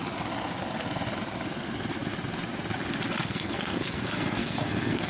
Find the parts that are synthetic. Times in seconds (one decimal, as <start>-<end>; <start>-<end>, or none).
3.2-5.1